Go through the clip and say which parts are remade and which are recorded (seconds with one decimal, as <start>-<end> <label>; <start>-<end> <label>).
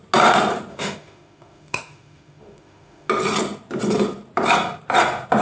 0.0-0.7 recorded; 0.7-3.1 remade; 3.1-5.4 recorded